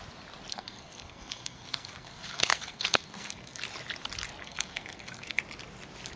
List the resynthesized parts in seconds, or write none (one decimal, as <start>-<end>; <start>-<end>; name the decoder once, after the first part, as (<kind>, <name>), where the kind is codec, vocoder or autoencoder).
0.5-3.6 (codec, SNAC); 4.4-5.4